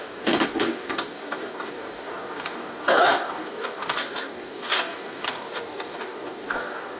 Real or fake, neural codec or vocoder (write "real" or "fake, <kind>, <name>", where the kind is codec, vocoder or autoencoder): fake, codec, DAC